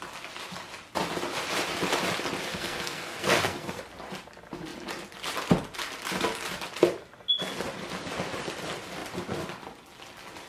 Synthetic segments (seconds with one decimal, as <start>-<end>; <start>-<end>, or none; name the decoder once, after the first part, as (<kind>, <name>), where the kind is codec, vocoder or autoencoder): 2.5-3.8 (codec, SNAC)